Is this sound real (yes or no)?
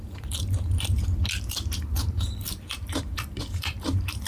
no